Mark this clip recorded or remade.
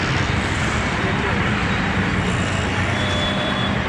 remade